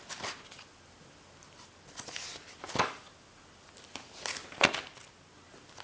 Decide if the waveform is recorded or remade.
recorded